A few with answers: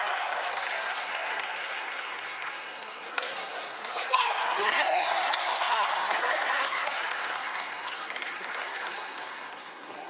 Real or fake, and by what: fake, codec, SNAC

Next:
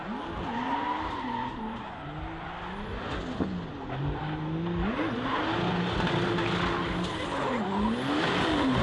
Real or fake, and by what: real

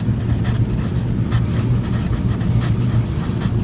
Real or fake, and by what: real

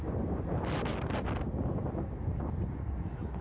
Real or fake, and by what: real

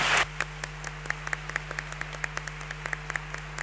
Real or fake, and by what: real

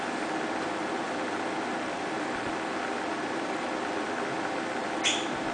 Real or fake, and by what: real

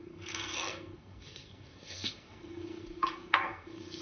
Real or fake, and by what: fake, codec, SNAC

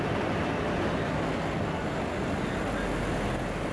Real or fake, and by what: real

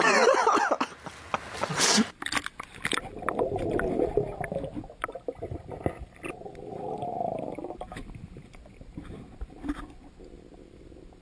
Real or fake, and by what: real